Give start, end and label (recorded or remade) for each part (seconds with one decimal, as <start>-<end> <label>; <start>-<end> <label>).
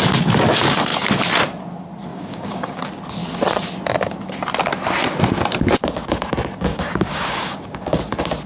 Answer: 0.0-2.1 recorded; 2.1-2.8 remade; 2.8-6.7 recorded; 6.7-8.0 remade; 8.0-8.5 recorded